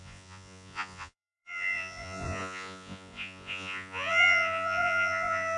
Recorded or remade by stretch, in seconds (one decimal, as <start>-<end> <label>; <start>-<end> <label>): 0.0-5.6 remade